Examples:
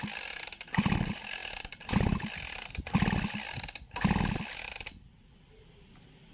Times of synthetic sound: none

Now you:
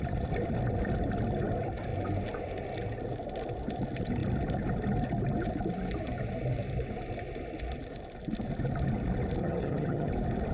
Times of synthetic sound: 9.4-10.1 (vocoder, HiFi-GAN)